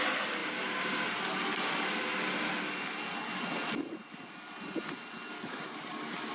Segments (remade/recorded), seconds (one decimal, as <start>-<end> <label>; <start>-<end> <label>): 0.0-6.3 recorded